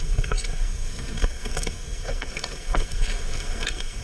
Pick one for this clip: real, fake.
fake